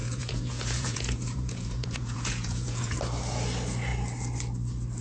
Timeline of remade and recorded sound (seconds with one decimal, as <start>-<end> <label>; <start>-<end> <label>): 0.0-3.0 remade; 3.0-5.0 recorded